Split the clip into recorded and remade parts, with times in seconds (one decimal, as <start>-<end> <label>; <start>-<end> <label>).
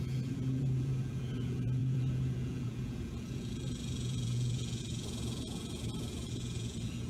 0.0-7.1 remade